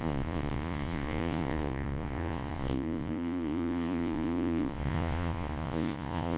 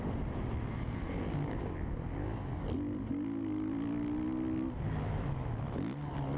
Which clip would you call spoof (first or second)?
first